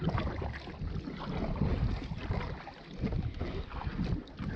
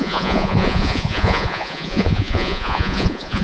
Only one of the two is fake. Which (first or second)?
second